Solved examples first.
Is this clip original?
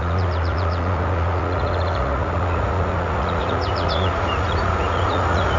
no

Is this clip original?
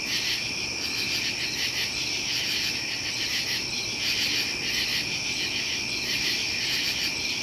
yes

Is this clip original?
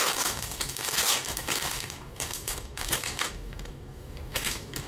no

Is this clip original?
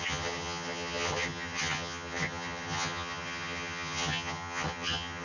no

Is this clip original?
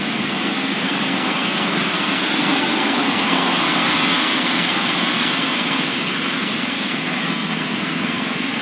no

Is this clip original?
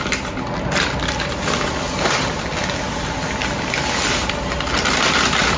yes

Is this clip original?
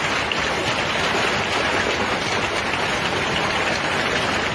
yes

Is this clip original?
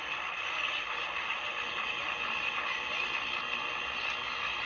yes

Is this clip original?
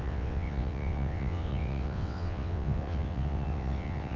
no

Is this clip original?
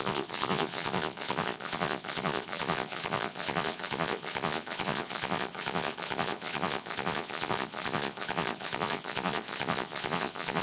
no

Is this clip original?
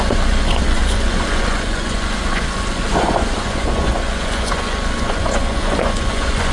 no